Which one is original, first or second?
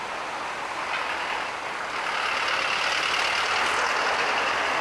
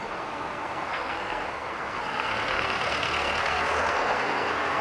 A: first